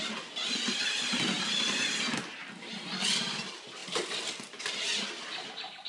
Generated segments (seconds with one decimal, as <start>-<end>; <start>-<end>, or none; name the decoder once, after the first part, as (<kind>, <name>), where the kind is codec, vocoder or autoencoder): none